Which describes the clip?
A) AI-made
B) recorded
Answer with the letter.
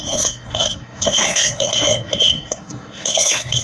A